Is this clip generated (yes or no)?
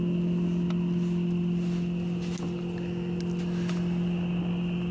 no